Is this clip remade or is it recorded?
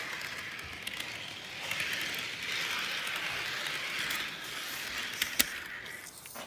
recorded